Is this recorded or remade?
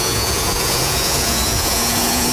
remade